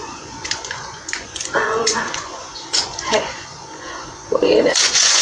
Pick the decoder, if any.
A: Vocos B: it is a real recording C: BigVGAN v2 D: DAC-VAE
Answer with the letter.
A